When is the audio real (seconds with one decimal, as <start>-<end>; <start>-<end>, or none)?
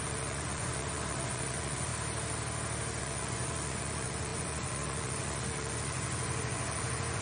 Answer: 1.9-3.0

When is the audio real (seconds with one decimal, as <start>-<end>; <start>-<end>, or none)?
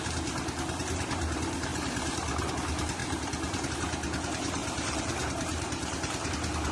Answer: 0.0-1.7; 2.5-3.0; 3.7-4.6; 6.3-6.7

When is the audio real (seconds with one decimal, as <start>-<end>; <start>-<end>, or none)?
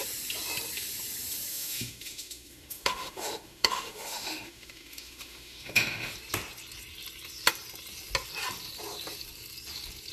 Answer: 0.0-1.5; 6.1-10.1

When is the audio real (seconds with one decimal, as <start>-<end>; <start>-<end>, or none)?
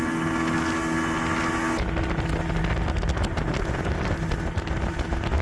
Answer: 0.0-5.4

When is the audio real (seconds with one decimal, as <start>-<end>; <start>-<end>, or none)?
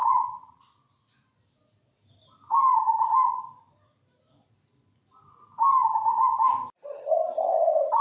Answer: 0.6-8.0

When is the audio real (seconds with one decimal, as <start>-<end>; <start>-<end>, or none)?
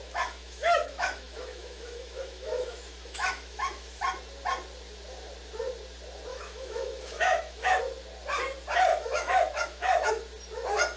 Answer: 4.0-6.3; 7.8-8.9; 10.1-11.0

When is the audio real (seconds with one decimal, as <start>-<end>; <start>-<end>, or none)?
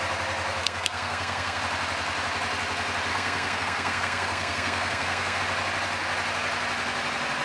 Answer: 0.0-0.6; 1.6-3.1; 5.4-7.4